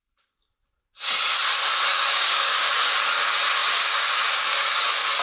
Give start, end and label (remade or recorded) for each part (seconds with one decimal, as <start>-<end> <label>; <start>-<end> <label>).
0.0-1.9 recorded; 1.9-2.7 remade; 2.7-5.2 recorded